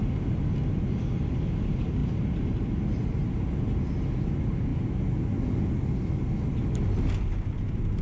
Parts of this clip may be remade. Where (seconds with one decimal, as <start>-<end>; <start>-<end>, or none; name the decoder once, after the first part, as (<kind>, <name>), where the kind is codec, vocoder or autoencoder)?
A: none